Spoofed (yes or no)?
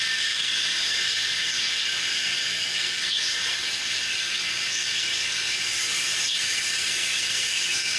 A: yes